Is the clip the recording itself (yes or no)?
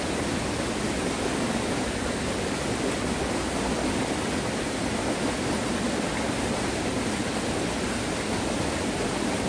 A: yes